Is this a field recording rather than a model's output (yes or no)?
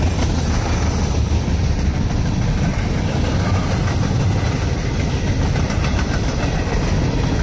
yes